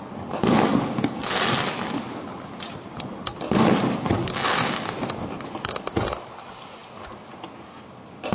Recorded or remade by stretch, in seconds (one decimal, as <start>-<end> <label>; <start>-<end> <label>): 0.0-8.3 recorded